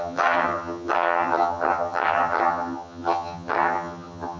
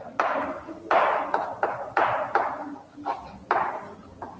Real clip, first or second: second